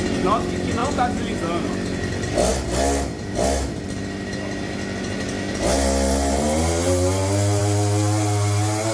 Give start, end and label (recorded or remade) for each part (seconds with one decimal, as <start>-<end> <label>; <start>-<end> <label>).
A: 0.0-8.9 recorded